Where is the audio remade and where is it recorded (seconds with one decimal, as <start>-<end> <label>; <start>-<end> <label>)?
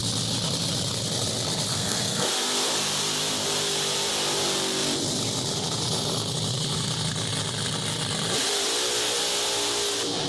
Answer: 0.0-1.7 recorded; 1.7-2.3 remade; 2.3-10.3 recorded